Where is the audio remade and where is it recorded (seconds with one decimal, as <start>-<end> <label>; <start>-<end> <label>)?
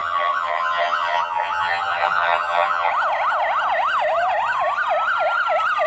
0.0-2.9 remade; 2.9-5.9 recorded